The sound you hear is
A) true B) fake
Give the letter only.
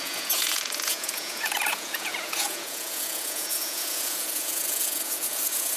B